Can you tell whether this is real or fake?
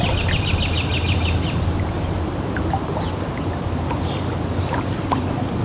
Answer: real